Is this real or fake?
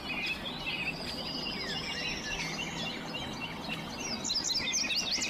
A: real